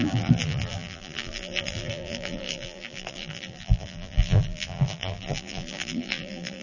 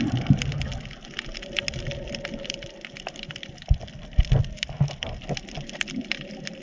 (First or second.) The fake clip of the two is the first